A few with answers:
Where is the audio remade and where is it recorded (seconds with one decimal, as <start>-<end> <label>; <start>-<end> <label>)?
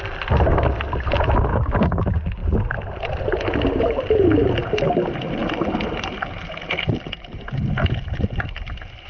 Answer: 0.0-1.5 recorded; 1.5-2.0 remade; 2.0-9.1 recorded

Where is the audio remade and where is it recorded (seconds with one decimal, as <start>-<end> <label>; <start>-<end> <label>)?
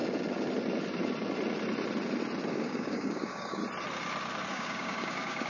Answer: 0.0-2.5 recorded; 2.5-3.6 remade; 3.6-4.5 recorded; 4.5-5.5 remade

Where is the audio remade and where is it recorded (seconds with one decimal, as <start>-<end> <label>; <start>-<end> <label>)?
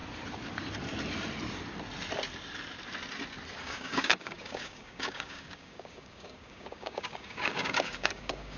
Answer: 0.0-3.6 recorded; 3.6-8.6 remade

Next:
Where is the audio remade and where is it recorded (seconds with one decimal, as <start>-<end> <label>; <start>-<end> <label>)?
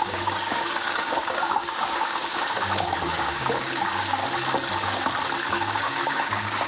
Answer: 0.0-4.2 remade; 4.2-5.5 recorded; 5.5-6.7 remade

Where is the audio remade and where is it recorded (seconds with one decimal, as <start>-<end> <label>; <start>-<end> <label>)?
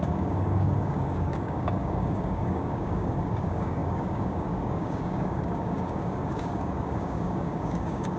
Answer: 0.0-8.2 remade